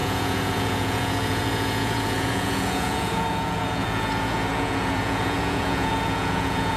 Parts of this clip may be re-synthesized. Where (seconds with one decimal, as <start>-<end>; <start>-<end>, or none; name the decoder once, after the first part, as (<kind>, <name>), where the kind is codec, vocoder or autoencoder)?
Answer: 0.0-6.8 (vocoder, Vocos)